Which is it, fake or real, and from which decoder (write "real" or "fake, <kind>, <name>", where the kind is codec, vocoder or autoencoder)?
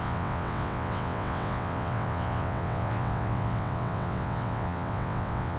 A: fake, vocoder, WaveNeXt